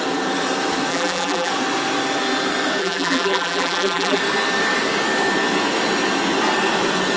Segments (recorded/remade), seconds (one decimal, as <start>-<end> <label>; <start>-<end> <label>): 0.0-0.9 recorded; 0.9-1.5 remade; 1.5-2.8 recorded; 2.8-4.2 remade; 4.2-7.2 recorded